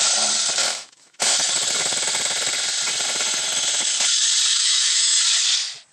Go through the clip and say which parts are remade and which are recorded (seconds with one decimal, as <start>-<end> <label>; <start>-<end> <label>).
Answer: 0.0-0.6 recorded; 0.6-1.5 remade; 1.5-4.5 recorded; 4.5-5.2 remade; 5.2-5.9 recorded

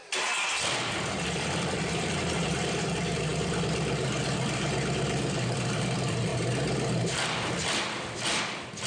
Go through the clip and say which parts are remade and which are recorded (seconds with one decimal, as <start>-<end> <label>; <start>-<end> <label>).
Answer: 0.0-2.0 recorded; 2.0-6.3 remade; 6.3-8.4 recorded; 8.4-8.9 remade

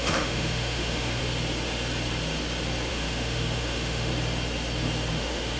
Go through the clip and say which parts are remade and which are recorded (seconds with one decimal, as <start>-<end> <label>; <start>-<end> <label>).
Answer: 0.0-1.2 remade; 1.2-2.9 recorded; 2.9-4.1 remade; 4.1-5.1 recorded; 5.1-5.6 remade

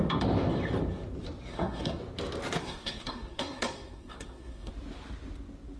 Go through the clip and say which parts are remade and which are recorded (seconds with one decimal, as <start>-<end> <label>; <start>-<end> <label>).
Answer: 0.0-1.5 recorded; 1.5-2.0 remade; 2.0-2.6 recorded; 2.6-4.7 remade; 4.7-5.8 recorded

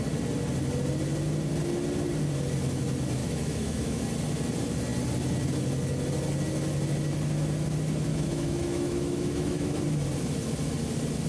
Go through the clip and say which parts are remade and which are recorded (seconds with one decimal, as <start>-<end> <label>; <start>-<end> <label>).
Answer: 0.0-3.2 recorded; 3.2-4.0 remade; 4.0-8.1 recorded; 8.1-9.8 remade; 9.8-11.3 recorded

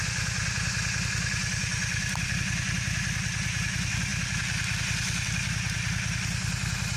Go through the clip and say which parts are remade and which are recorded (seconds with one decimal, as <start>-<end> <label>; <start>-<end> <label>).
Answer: 0.0-7.0 recorded

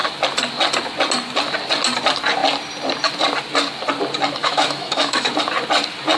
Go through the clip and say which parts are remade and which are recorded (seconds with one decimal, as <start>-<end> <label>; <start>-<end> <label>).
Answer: 0.0-4.4 recorded; 4.4-5.3 remade; 5.3-6.2 recorded